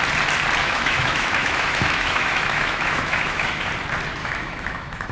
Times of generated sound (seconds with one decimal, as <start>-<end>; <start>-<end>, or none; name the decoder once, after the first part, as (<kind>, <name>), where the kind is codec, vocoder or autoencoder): 0.6-3.7 (autoencoder, DAC-VAE); 4.2-5.1